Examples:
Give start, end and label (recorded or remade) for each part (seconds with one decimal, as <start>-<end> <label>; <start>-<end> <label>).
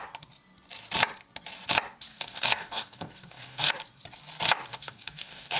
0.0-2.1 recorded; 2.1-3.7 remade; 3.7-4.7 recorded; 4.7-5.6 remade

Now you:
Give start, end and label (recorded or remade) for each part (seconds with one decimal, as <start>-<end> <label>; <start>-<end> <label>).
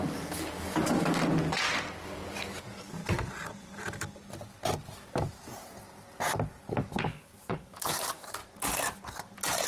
0.0-1.2 remade; 1.2-2.0 recorded; 2.0-3.0 remade; 3.0-7.0 recorded; 7.0-8.4 remade; 8.4-9.7 recorded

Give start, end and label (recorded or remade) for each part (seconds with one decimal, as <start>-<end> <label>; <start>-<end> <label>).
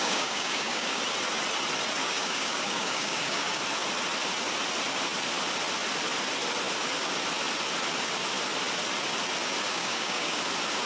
0.0-1.0 remade; 1.0-2.0 recorded; 2.0-3.6 remade; 3.6-9.7 recorded; 9.7-10.4 remade; 10.4-10.9 recorded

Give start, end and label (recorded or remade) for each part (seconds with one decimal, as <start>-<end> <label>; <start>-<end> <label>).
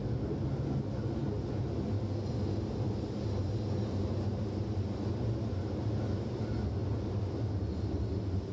0.0-8.5 recorded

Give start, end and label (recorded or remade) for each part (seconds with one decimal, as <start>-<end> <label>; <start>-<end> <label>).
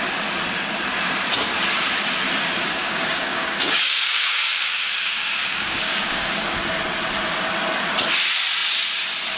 0.0-2.8 recorded; 2.8-6.5 remade; 6.5-9.4 recorded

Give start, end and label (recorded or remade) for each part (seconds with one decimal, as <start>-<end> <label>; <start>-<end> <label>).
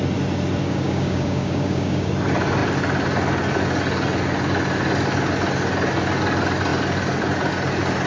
0.0-0.6 recorded; 0.6-2.1 remade; 2.1-8.1 recorded